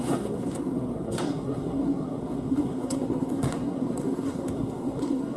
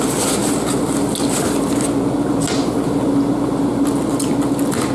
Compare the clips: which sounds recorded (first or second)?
second